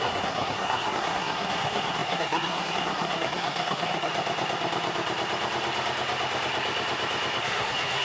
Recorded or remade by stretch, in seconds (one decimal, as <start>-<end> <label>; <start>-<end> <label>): 0.0-4.1 remade; 4.1-7.4 recorded; 7.4-8.0 remade